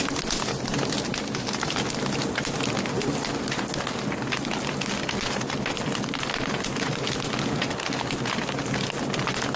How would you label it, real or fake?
real